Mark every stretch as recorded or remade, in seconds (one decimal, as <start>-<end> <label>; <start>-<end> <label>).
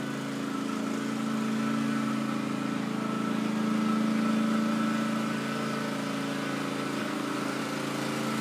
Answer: 0.0-7.0 recorded; 7.0-7.6 remade; 7.6-8.4 recorded